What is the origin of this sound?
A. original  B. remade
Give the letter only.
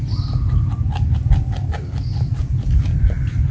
A